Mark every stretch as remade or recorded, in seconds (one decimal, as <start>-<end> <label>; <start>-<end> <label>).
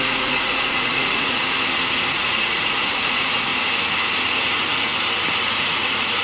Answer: 0.0-1.4 remade; 1.4-2.1 recorded; 2.1-3.5 remade; 3.5-4.4 recorded; 4.4-4.9 remade; 4.9-5.4 recorded; 5.4-6.2 remade